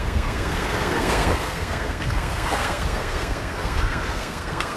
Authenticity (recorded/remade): remade